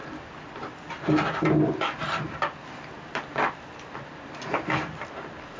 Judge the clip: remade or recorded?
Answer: recorded